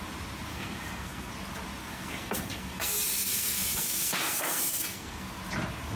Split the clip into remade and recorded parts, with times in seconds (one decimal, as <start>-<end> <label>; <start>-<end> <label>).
0.0-0.5 recorded; 0.5-1.3 remade; 1.3-1.8 recorded; 1.8-5.4 remade; 5.4-6.0 recorded